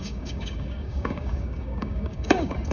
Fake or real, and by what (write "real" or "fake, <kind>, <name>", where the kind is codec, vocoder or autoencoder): fake, codec, DAC